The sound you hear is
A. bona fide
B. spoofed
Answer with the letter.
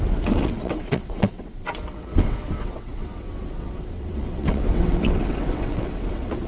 B